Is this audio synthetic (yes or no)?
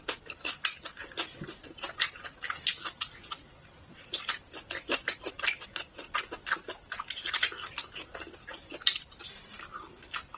no